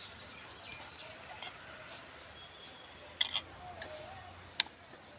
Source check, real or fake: real